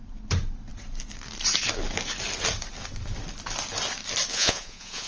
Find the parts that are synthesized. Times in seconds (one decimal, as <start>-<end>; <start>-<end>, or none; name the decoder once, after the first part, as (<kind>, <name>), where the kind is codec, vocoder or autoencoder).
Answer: 4.3-5.1 (vocoder, Vocos)